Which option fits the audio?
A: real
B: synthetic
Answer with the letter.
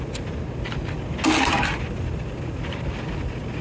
A